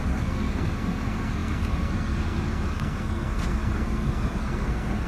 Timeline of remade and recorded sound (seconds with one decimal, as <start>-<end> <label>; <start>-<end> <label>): 0.0-5.1 remade